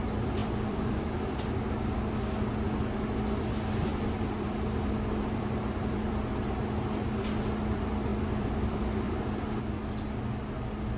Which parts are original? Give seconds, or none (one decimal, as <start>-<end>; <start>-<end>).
0.0-0.4; 1.2-3.9; 6.3-8.1; 9.1-11.0